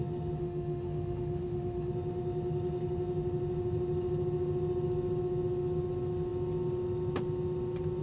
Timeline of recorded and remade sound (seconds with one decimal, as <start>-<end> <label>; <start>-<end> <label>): 0.0-0.4 recorded; 0.4-1.9 remade; 1.9-8.0 recorded